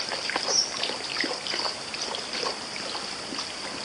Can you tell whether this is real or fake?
real